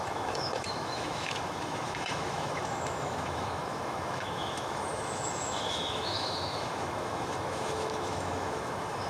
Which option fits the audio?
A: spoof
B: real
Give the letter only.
A